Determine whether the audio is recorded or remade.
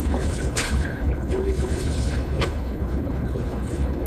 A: remade